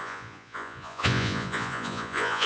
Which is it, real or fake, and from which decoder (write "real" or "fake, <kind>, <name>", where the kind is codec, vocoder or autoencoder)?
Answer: fake, vocoder, Vocos